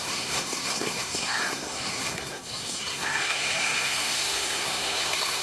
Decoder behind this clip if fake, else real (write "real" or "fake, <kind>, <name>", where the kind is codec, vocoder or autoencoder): fake, codec, SNAC